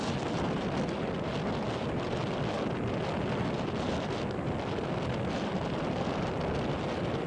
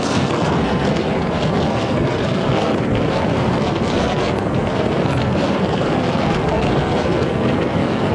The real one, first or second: first